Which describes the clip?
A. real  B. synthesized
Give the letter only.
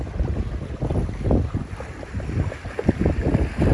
A